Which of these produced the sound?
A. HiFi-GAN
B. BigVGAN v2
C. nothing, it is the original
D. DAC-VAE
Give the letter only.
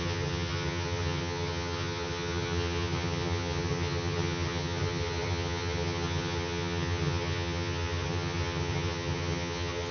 A